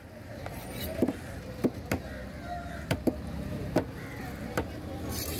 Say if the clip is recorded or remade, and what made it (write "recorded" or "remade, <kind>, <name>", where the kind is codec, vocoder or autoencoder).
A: recorded